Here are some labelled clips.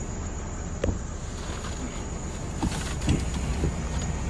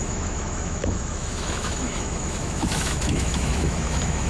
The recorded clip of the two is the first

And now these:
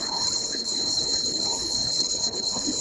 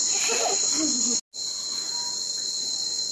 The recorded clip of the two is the second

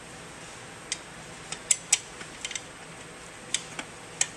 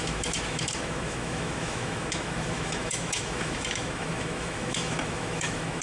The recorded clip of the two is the first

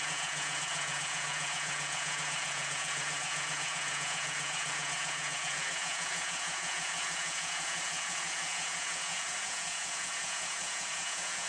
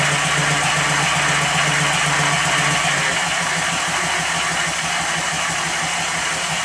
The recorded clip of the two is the second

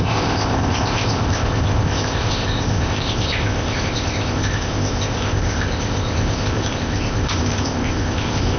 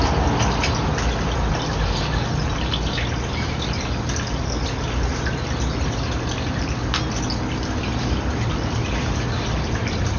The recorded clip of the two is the second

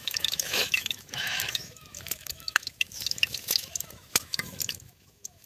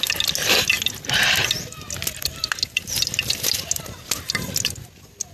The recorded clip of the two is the second